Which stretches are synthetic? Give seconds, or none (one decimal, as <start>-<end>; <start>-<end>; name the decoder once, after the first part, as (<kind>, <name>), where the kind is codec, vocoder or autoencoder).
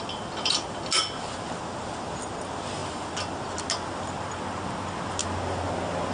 none